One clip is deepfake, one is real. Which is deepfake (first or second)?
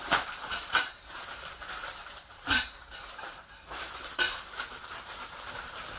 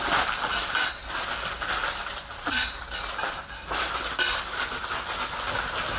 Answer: first